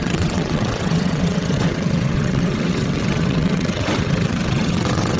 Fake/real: fake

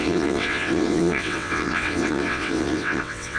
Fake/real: fake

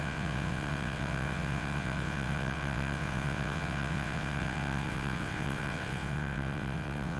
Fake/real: fake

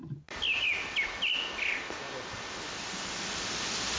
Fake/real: real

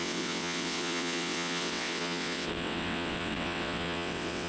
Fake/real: fake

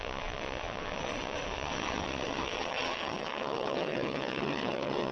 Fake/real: fake